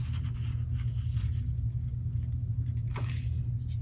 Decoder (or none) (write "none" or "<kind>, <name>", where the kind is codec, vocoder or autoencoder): none